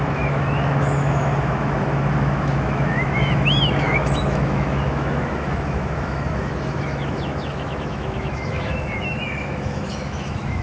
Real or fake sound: fake